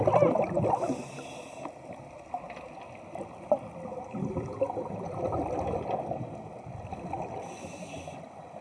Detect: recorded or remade recorded